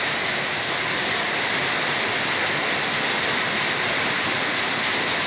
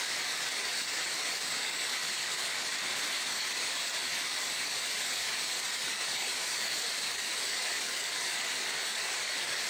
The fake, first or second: second